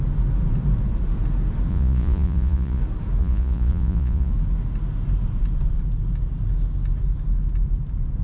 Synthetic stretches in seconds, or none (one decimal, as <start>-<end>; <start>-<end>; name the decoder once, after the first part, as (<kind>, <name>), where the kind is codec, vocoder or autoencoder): 1.7-2.8 (vocoder, Vocos); 3.2-4.3